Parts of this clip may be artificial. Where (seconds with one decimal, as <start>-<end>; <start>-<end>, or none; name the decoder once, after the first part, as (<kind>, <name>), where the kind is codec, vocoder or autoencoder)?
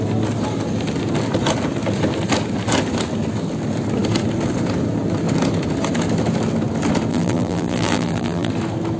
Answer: 7.1-8.5 (vocoder, BigVGAN v2)